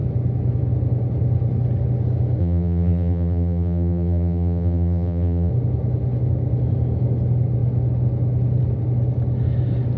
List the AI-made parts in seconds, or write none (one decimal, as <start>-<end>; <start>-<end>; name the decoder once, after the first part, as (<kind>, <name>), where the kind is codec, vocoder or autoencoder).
2.4-5.5 (vocoder, BigVGAN v2)